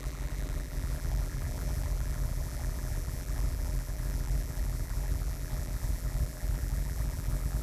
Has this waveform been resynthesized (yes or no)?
yes